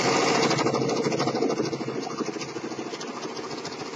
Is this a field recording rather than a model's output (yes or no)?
yes